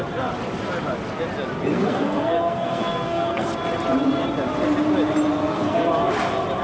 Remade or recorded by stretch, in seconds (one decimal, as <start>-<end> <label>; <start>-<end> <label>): 0.0-1.7 recorded; 1.7-3.5 remade; 3.5-5.4 recorded; 5.4-5.9 remade; 5.9-6.6 recorded